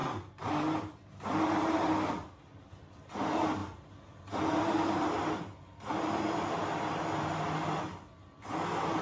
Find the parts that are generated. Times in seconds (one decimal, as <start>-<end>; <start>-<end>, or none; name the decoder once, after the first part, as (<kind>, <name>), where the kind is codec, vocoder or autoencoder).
none